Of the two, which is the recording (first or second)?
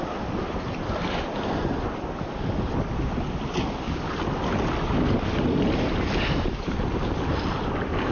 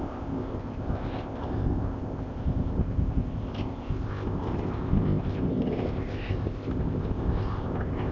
first